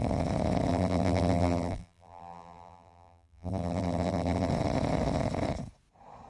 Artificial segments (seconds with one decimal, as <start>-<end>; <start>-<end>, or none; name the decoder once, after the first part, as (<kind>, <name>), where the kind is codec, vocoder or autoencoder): 0.7-4.5 (vocoder, BigVGAN v2)